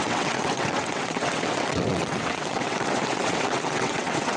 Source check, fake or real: fake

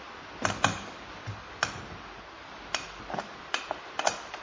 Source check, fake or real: real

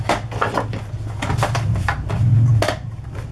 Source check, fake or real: real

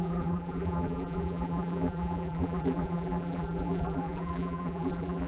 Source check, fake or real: fake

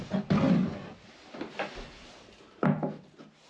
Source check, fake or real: real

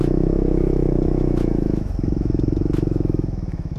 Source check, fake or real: fake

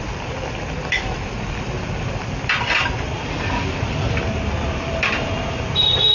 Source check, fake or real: fake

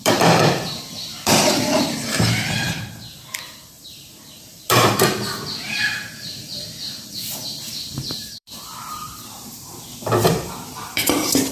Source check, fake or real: fake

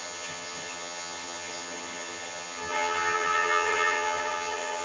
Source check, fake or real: fake